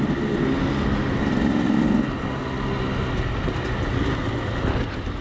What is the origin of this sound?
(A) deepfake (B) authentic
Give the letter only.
B